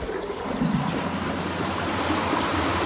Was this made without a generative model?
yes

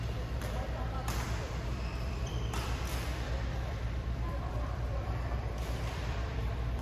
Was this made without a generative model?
no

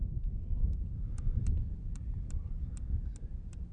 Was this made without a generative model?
no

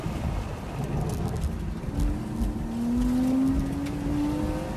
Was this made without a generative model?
yes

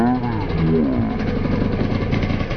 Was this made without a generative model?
yes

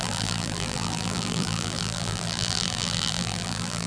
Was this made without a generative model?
no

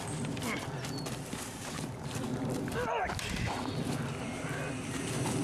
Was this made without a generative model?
yes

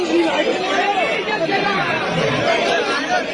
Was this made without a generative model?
no